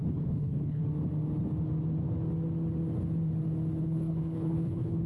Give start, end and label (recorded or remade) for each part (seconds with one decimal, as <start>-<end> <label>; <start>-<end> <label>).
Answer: 0.0-0.8 remade; 0.8-3.8 recorded; 3.8-5.1 remade